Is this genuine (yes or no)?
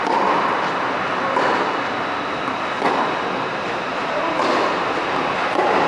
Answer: yes